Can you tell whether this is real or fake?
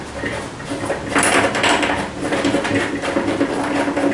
real